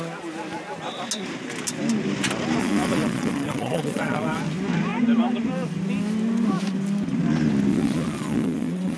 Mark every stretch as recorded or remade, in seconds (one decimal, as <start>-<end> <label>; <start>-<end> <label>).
0.0-2.6 recorded; 2.6-4.4 remade; 4.4-7.7 recorded; 7.7-9.0 remade